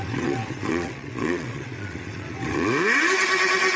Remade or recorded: remade